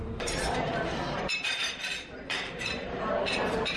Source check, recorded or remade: remade